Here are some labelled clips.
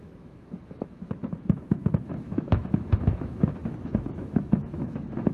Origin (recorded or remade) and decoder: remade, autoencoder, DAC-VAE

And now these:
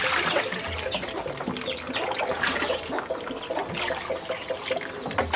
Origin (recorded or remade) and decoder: recorded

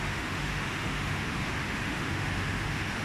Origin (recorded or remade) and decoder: remade, autoencoder, DAC-VAE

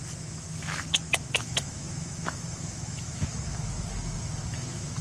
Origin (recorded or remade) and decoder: remade, autoencoder, DAC-VAE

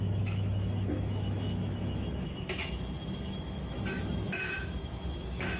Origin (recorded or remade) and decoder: remade, autoencoder, DAC-VAE